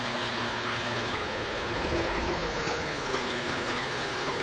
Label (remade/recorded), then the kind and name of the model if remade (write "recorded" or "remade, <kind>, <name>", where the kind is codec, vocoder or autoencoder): remade, codec, HILCodec